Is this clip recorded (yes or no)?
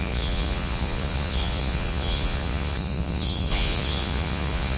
no